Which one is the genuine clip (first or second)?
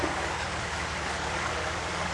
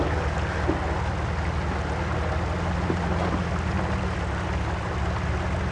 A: second